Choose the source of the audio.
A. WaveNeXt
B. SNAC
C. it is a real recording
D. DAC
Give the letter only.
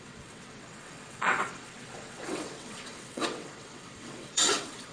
A